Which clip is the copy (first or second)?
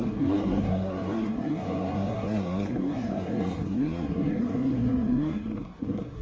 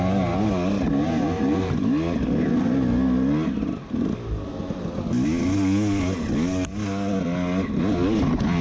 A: first